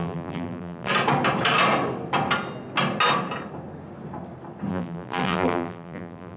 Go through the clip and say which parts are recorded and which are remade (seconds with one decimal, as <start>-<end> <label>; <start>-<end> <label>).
0.0-0.9 remade; 0.9-4.7 recorded; 4.7-6.4 remade